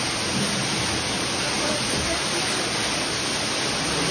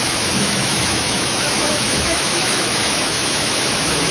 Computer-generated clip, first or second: second